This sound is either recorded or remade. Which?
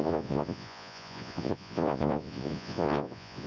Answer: remade